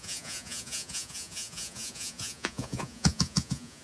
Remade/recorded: remade